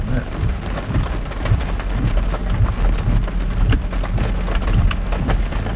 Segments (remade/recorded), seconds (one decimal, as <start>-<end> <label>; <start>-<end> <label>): 0.0-5.8 recorded